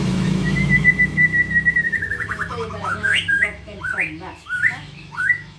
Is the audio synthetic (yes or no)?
yes